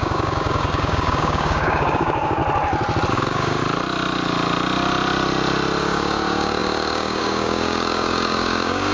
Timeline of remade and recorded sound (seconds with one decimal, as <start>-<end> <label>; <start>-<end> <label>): 0.0-2.4 remade; 2.4-3.1 recorded; 3.1-3.6 remade; 3.6-5.8 recorded; 5.8-8.9 remade

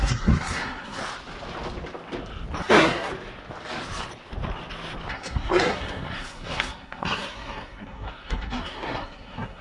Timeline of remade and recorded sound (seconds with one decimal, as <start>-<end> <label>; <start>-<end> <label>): 0.0-1.0 remade; 1.0-2.6 recorded; 2.6-3.1 remade; 3.1-5.1 recorded; 5.1-9.6 remade

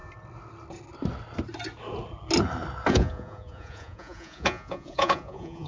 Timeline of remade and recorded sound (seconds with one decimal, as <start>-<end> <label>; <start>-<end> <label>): 0.0-2.9 recorded; 2.9-5.7 remade

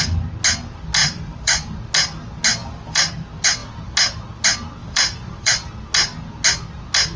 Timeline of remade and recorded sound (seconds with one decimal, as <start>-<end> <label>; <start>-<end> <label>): 0.0-1.0 recorded; 1.0-1.8 remade; 1.8-2.6 recorded; 2.6-3.1 remade; 3.1-4.8 recorded; 4.8-5.7 remade; 5.7-7.2 recorded

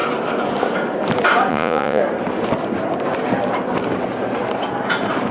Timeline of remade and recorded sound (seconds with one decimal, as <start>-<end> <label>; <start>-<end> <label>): 0.0-1.5 recorded; 1.5-2.0 remade; 2.0-5.3 recorded

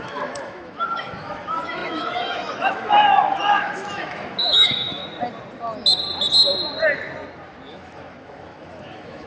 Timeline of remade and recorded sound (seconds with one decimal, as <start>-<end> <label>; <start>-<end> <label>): 0.0-5.0 remade; 5.0-7.7 recorded; 7.7-9.3 remade

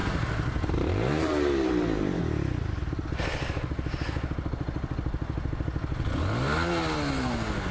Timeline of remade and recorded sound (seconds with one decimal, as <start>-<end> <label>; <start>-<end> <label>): 0.0-2.2 remade; 2.2-7.7 recorded

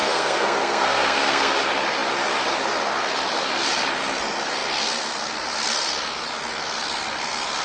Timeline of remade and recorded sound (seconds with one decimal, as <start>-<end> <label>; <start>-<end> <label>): 0.0-1.5 remade; 1.5-7.6 recorded